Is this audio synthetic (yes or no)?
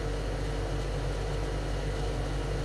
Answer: no